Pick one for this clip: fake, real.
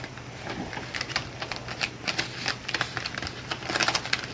fake